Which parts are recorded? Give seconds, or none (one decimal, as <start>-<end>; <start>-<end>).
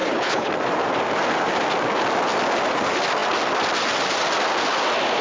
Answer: 0.5-5.2